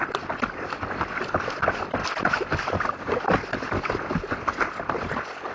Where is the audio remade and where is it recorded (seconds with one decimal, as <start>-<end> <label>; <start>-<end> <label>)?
0.0-5.5 recorded